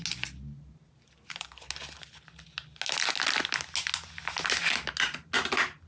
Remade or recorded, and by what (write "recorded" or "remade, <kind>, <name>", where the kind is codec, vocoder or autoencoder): recorded